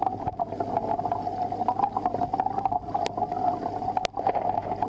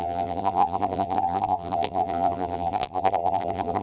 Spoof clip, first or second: second